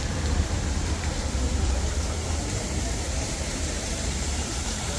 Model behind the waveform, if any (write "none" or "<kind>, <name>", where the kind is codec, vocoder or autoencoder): vocoder, BigVGAN v2